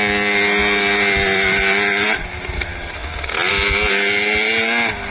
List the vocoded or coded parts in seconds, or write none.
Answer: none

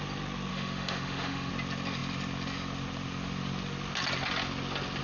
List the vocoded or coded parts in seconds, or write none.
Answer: 0.5-1.5 (autoencoder, DAC-VAE)

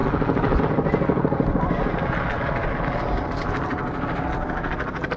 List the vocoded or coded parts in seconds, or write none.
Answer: none

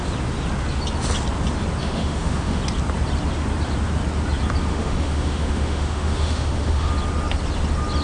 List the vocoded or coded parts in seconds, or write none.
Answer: 1.8-2.6 (autoencoder, DAC-VAE); 4.7-6.9

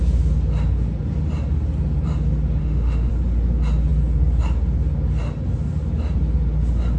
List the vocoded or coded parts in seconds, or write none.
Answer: 2.6-3.1 (autoencoder, DAC-VAE)